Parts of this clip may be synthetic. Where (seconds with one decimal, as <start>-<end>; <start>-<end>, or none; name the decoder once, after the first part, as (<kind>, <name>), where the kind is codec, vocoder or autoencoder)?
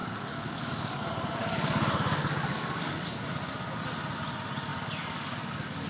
0.0-3.2 (codec, DAC); 4.7-5.9